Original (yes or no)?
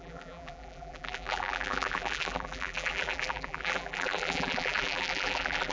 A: no